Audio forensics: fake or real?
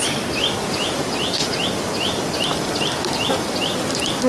real